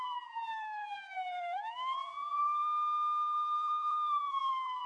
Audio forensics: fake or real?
fake